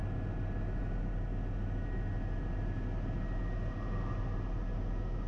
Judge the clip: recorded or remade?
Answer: recorded